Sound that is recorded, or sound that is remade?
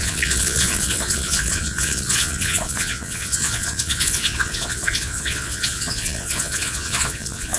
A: remade